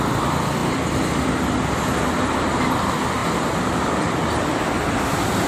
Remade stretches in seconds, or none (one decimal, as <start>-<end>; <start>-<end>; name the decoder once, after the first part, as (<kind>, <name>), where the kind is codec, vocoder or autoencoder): none